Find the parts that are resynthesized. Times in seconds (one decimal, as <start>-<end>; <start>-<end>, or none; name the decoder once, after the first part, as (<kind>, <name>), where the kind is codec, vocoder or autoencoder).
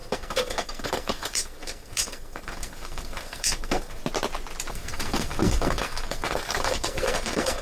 0.0-4.0 (codec, SNAC); 4.7-7.6